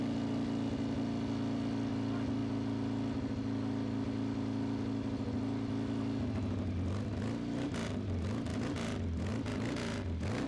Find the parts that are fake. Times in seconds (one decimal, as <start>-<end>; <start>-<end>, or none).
none

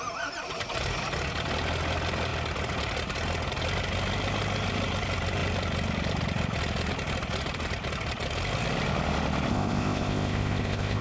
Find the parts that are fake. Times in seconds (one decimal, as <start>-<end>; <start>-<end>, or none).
9.5-11.0